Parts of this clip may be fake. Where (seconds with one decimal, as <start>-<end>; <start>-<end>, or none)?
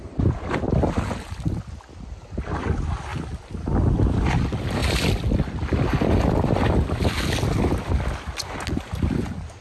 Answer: none